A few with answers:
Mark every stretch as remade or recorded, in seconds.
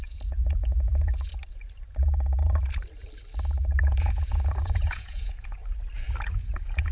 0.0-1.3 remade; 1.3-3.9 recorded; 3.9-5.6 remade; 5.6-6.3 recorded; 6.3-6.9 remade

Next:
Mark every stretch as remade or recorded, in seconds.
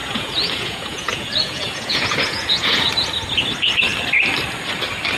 0.0-2.9 remade; 2.9-5.2 recorded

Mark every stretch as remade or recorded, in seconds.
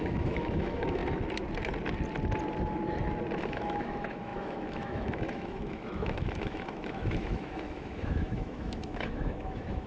0.0-1.0 remade; 1.0-3.4 recorded; 3.4-9.9 remade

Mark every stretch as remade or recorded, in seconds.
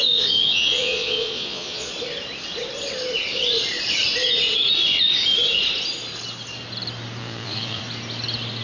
0.0-1.9 remade; 1.9-7.2 recorded; 7.2-7.8 remade; 7.8-8.6 recorded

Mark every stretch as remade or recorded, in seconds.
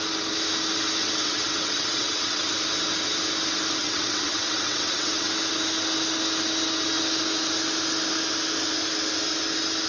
0.0-1.0 recorded; 1.0-2.5 remade; 2.5-3.8 recorded; 3.8-5.3 remade; 5.3-9.9 recorded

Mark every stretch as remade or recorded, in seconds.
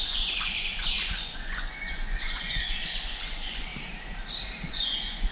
0.0-3.7 remade; 3.7-4.7 recorded; 4.7-5.3 remade